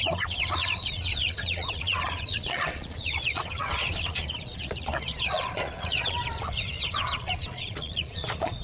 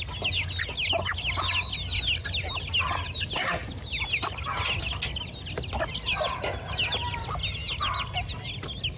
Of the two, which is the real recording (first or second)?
second